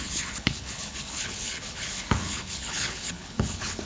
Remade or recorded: remade